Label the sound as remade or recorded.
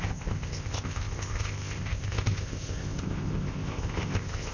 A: remade